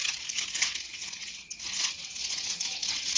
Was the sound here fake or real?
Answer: fake